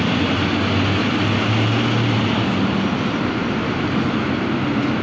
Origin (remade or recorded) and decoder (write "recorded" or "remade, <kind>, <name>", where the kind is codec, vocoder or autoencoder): recorded